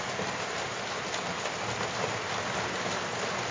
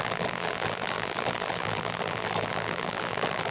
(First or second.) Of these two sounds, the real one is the first